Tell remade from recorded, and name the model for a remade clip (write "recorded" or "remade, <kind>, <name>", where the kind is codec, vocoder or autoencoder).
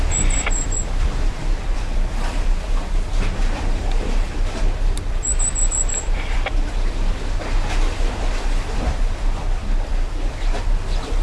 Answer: remade, vocoder, BigVGAN v2